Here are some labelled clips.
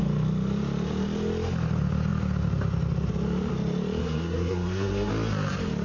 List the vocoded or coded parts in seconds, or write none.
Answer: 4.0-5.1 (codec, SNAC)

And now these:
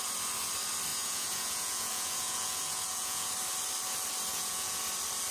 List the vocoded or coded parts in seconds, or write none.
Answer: 0.9-3.3 (vocoder, Vocos); 4.3-4.8

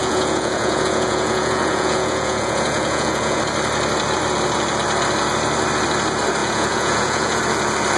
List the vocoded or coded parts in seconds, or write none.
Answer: 0.0-3.4 (vocoder, Vocos); 6.4-7.4

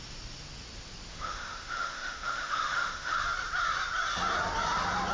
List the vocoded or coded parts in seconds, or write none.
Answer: 1.1-3.2 (autoencoder, DAC-VAE)

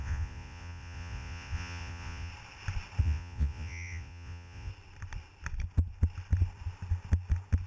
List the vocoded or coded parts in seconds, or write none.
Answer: 0.0-2.3 (vocoder, Vocos); 3.0-4.7

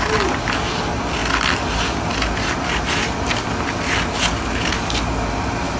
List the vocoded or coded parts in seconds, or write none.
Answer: none